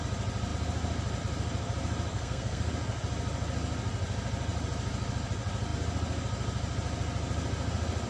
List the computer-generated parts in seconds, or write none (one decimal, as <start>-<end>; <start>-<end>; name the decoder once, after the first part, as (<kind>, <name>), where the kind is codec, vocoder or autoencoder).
2.1-2.7 (codec, SNAC)

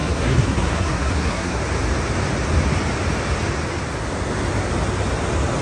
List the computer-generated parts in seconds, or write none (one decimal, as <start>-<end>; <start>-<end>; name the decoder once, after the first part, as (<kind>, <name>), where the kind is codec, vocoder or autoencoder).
0.0-1.6 (codec, SNAC)

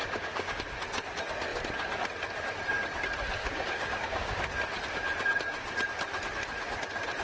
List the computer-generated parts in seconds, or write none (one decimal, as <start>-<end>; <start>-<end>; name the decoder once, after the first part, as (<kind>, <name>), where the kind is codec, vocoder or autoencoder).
0.0-0.6 (codec, DAC); 3.4-4.6

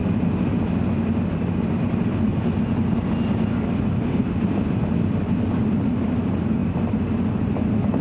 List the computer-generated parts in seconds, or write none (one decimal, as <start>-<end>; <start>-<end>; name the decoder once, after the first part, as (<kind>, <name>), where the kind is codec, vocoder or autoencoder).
1.2-2.3 (vocoder, BigVGAN v2); 4.2-8.0